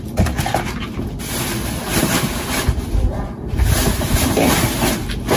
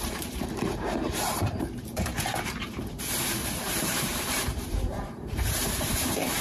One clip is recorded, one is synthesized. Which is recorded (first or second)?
first